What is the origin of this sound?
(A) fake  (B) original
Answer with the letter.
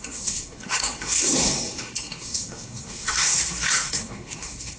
A